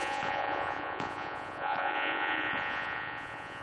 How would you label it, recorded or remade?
remade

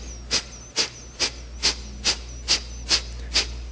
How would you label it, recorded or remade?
recorded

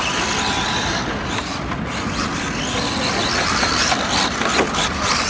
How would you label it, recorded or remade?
recorded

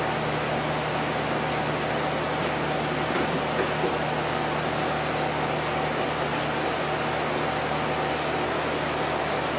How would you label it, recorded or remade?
recorded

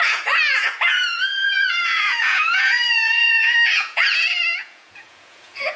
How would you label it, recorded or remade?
remade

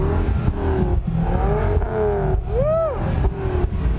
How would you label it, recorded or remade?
recorded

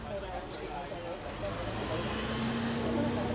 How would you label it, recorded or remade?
recorded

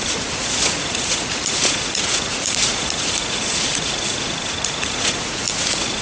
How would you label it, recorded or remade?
remade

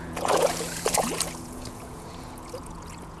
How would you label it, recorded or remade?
remade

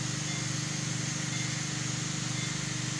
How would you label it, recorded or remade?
recorded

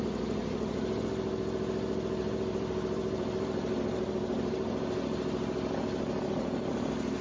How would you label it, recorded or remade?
recorded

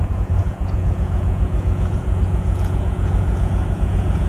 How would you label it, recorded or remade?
remade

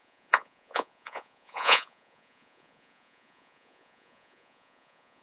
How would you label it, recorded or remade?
remade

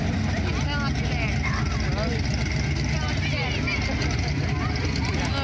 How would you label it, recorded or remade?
recorded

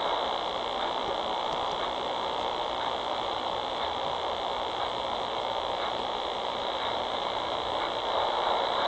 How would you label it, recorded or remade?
recorded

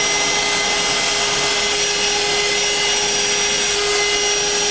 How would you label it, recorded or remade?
recorded